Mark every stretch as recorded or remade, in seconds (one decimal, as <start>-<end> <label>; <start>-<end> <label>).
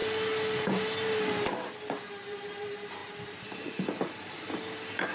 0.0-3.0 recorded; 3.0-4.3 remade; 4.3-5.1 recorded